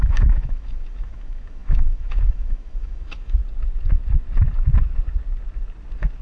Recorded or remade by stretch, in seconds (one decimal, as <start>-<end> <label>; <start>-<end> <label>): 0.0-3.4 remade; 3.4-6.2 recorded